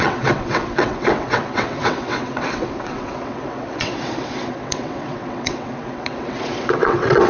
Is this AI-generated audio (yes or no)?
yes